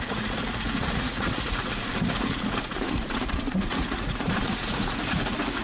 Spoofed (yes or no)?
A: yes